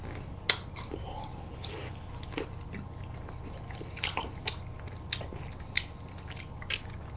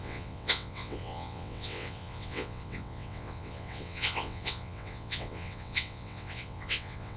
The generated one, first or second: second